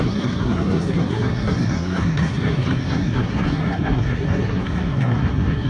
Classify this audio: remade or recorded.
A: remade